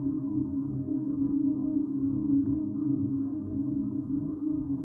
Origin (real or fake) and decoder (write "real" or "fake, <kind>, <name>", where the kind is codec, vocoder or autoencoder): fake, codec, DAC